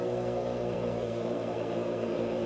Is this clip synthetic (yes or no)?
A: yes